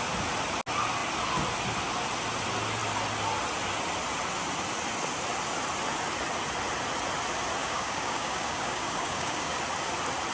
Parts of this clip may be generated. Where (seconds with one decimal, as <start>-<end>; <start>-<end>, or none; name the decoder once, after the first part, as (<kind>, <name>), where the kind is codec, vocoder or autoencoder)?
7.6-9.6 (codec, DAC)